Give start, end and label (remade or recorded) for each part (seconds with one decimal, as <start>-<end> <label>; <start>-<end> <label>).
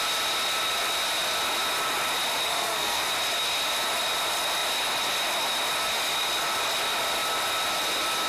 0.0-2.5 recorded; 2.5-3.1 remade; 3.1-8.3 recorded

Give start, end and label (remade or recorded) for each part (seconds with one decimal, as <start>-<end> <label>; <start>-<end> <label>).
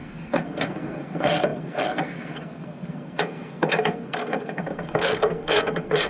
0.0-6.1 remade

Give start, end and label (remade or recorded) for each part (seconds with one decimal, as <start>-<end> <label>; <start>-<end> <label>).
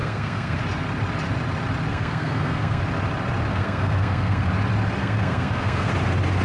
0.0-0.6 remade; 0.6-1.9 recorded; 1.9-2.8 remade; 2.8-3.5 recorded; 3.5-4.5 remade; 4.5-5.0 recorded; 5.0-5.9 remade; 5.9-6.4 recorded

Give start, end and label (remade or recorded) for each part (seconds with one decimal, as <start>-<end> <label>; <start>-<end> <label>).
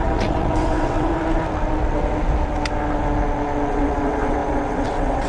0.0-1.1 remade; 1.1-3.7 recorded; 3.7-5.3 remade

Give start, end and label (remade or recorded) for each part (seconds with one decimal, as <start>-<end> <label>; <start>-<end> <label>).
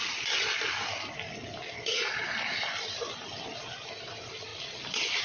0.0-5.2 recorded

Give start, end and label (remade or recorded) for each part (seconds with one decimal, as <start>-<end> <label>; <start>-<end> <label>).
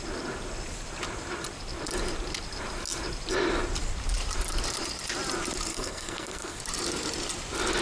0.0-5.7 recorded; 5.7-6.6 remade; 6.6-7.8 recorded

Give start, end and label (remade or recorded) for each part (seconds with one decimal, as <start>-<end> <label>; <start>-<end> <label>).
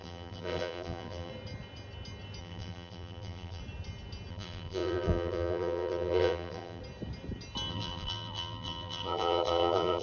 0.0-1.3 remade; 1.3-2.4 recorded; 2.4-3.6 remade; 3.6-4.3 recorded; 4.3-6.8 remade; 6.8-7.7 recorded; 7.7-10.0 remade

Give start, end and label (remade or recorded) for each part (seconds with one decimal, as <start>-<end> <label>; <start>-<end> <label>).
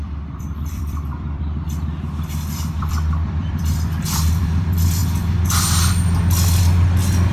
0.0-5.0 remade; 5.0-7.3 recorded